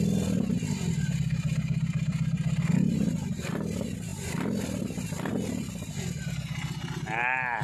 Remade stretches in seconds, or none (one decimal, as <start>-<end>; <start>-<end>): none